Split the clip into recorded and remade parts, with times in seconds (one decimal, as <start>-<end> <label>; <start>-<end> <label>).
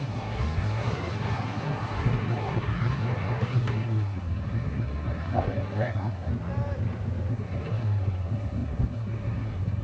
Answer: 0.0-6.3 remade; 6.3-7.3 recorded; 7.3-9.8 remade